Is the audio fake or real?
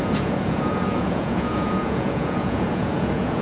fake